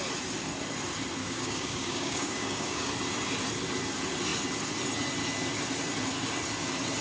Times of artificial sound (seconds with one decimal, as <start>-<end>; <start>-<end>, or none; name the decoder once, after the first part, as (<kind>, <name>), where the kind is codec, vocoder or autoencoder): 1.2-2.9 (codec, DAC)